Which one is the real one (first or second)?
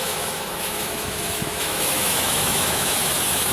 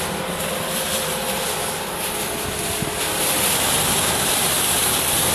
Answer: second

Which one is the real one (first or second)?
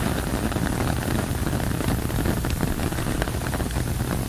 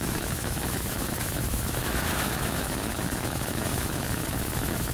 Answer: first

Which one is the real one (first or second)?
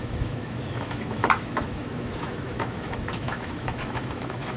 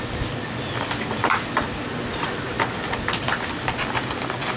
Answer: second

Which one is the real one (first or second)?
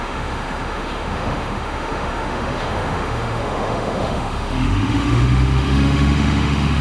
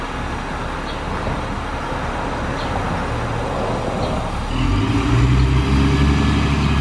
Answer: second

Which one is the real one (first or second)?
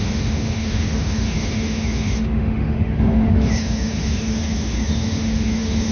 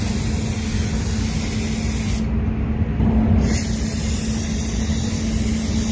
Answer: second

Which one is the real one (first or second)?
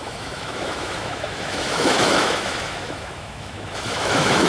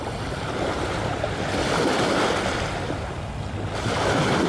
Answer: second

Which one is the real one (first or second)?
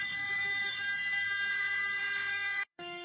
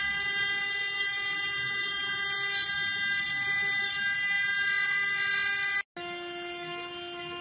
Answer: second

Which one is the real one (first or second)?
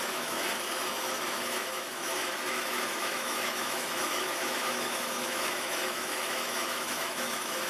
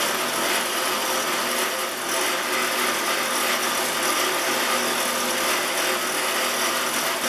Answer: second